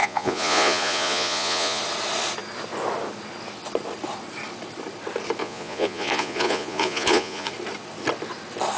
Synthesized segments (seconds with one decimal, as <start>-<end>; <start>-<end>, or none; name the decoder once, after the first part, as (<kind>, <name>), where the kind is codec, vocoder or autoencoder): 0.0-1.8 (vocoder, Vocos); 5.4-7.5